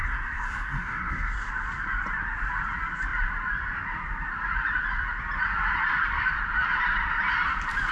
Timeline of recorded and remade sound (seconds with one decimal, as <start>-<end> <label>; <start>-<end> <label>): 0.0-1.5 remade; 1.5-7.9 recorded